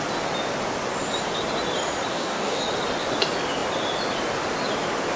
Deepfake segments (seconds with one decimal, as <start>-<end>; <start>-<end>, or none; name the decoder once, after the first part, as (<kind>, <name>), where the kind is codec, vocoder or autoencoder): 2.1-2.6 (codec, DAC)